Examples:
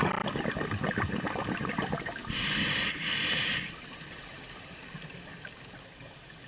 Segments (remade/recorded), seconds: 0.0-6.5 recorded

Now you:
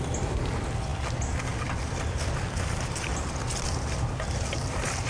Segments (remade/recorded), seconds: 0.0-5.1 recorded

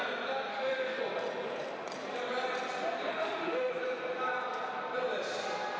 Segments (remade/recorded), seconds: 0.0-0.5 recorded; 0.5-1.0 remade; 1.0-3.1 recorded; 3.1-3.7 remade; 3.7-5.8 recorded

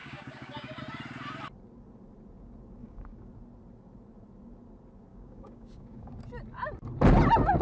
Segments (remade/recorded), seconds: 0.0-0.8 remade; 0.8-2.8 recorded; 2.8-3.3 remade; 3.3-5.1 recorded; 5.1-6.2 remade; 6.2-7.6 recorded

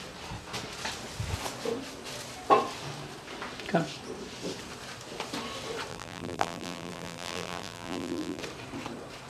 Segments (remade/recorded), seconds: 0.0-5.9 recorded; 5.9-8.4 remade; 8.4-9.3 recorded